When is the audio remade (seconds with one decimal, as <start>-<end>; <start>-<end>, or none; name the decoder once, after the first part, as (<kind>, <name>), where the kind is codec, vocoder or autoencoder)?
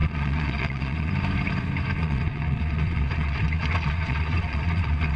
0.0-1.1 (vocoder, Vocos); 2.0-5.2